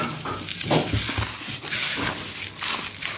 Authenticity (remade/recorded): recorded